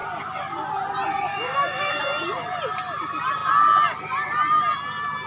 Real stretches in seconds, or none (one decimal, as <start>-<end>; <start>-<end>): 0.0-1.3; 2.0-5.3